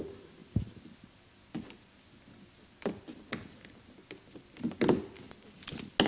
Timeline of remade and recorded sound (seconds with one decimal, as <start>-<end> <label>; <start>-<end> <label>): 0.0-6.1 recorded